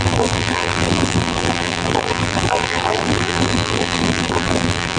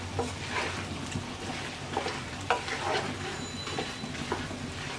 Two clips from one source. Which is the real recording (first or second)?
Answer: second